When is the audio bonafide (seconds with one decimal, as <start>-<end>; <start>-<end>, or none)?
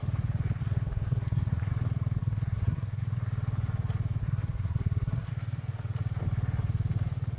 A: 0.0-0.6; 1.7-2.2; 3.0-4.2; 5.3-7.4